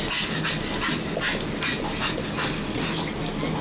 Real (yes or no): yes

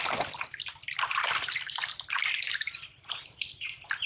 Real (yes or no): yes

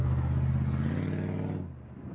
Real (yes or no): yes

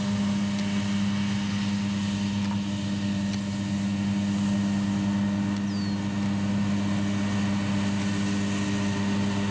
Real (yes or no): yes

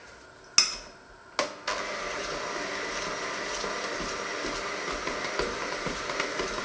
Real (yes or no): yes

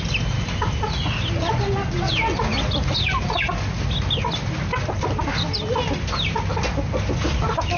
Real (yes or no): yes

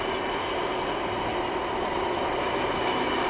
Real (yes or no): yes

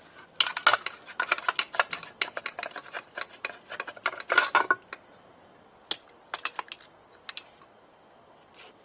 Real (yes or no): yes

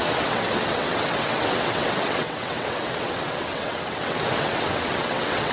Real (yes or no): no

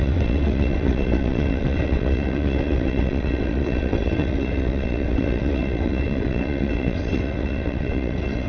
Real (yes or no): no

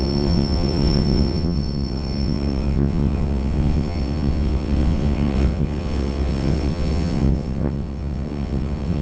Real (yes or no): no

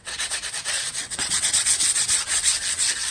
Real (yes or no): no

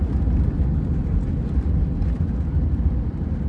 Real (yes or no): yes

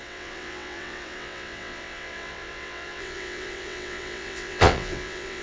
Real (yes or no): no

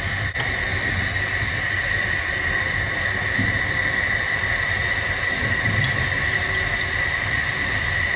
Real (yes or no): yes